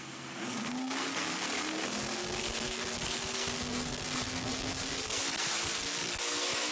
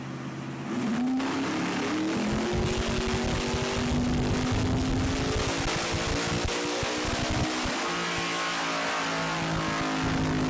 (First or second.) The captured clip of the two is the second